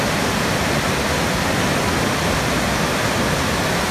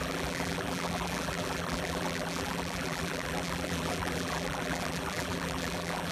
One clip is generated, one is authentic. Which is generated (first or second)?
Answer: second